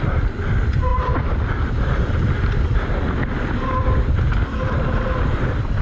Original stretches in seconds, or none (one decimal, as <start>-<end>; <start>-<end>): 0.0-5.8